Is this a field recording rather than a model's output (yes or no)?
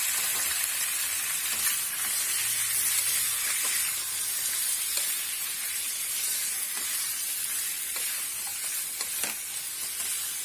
yes